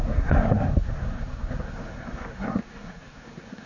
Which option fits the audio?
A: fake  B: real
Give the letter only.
A